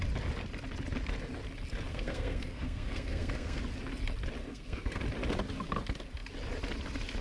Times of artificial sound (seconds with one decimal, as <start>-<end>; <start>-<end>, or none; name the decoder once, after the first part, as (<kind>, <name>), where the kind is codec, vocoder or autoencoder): 1.9-3.6 (codec, SNAC); 4.4-5.0